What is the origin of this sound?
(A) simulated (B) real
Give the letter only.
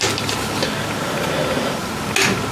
B